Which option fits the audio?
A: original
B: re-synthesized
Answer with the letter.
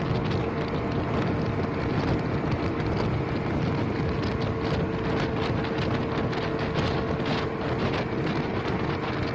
A